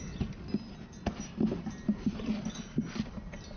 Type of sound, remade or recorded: recorded